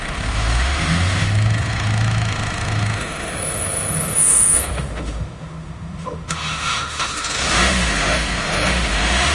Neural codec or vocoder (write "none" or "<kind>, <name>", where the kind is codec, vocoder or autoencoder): autoencoder, DAC-VAE